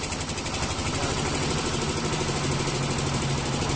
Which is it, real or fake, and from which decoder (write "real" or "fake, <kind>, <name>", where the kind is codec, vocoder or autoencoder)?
real